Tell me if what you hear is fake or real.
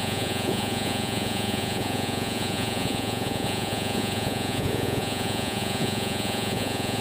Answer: fake